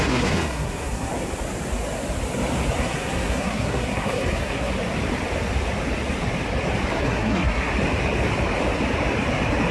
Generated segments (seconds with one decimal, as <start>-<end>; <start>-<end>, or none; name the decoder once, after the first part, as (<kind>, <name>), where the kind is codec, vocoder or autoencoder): 0.0-1.1 (codec, SNAC); 2.8-4.7; 6.9-7.7

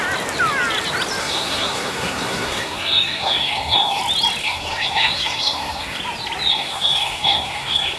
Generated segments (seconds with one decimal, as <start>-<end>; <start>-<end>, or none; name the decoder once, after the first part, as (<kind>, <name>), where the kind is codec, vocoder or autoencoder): 1.2-4.0 (codec, SNAC); 4.4-6.0; 6.5-8.0